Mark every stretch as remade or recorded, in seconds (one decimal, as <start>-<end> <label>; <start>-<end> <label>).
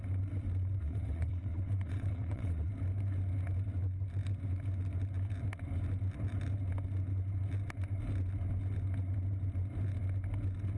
0.0-0.8 recorded; 0.8-2.7 remade; 2.7-10.8 recorded